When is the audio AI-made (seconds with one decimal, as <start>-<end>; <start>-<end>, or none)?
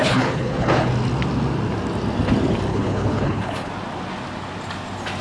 0.0-0.9; 2.7-3.7